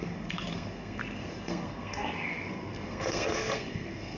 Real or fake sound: fake